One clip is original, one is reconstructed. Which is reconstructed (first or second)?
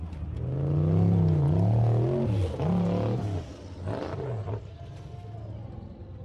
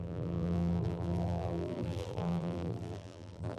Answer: second